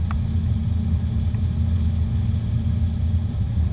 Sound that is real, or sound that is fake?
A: real